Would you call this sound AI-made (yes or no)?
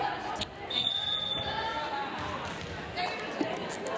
no